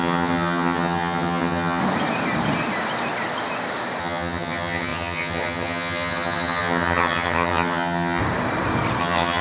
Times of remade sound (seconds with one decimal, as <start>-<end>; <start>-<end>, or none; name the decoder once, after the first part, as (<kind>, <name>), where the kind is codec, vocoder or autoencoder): 0.0-1.8 (vocoder, HiFi-GAN); 4.0-8.2; 9.0-9.4